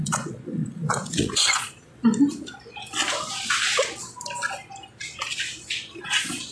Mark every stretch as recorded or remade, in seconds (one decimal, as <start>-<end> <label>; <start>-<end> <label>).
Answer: 0.0-2.0 remade; 2.0-5.8 recorded; 5.8-6.5 remade